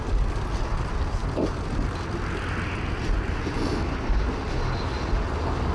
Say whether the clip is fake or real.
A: real